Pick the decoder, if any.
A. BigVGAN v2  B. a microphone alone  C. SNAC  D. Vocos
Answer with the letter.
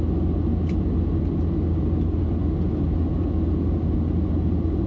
B